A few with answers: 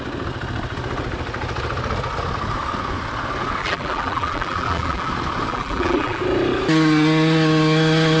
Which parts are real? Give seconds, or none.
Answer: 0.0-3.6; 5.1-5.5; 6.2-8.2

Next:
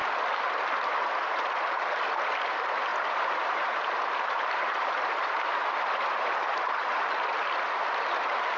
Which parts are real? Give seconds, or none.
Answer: 0.0-2.9; 7.0-8.6

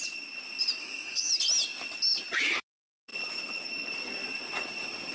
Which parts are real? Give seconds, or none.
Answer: 0.0-0.8; 1.3-5.1

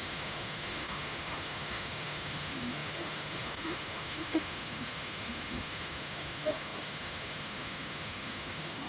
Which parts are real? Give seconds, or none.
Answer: none

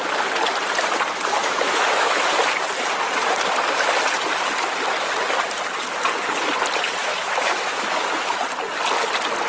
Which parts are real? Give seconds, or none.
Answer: 0.0-1.4; 2.3-7.0; 8.4-9.5